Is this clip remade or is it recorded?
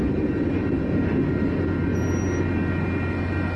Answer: recorded